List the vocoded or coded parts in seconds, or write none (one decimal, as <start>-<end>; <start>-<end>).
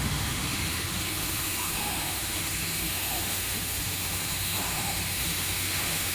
0.0-6.1